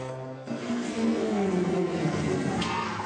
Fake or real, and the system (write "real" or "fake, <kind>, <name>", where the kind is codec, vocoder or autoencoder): fake, codec, SNAC